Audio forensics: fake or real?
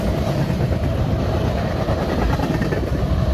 fake